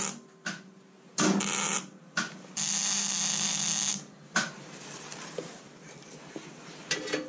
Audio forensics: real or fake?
real